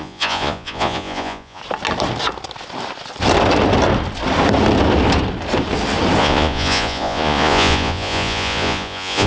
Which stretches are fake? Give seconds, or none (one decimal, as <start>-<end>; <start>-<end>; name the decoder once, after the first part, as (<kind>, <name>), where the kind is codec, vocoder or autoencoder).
0.0-1.6 (vocoder, Vocos); 6.2-9.3